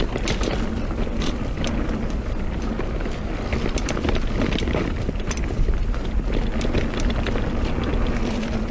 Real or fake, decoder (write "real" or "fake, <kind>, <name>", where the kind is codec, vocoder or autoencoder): real